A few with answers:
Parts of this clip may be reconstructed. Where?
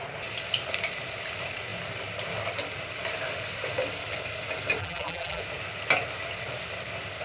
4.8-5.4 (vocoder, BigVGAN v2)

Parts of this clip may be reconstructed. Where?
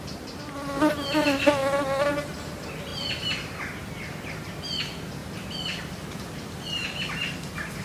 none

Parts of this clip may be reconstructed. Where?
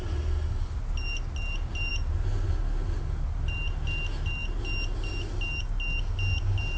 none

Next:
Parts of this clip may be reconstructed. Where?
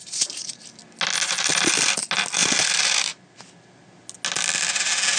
0.0-0.8 (vocoder, BigVGAN v2)